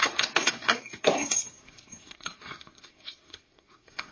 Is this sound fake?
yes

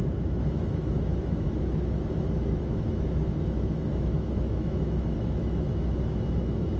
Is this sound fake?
yes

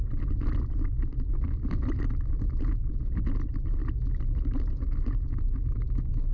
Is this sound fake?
no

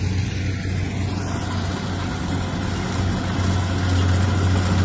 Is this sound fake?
no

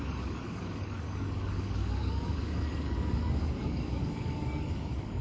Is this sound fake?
yes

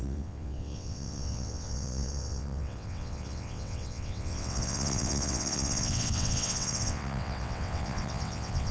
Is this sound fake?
yes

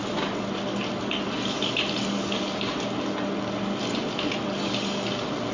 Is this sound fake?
yes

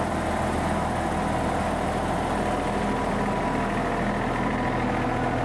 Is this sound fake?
no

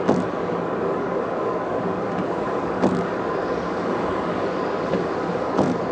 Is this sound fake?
yes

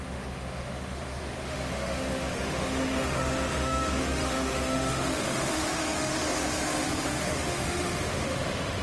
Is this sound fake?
yes